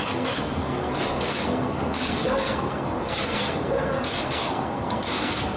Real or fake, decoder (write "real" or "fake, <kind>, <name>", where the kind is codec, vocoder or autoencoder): fake, codec, SNAC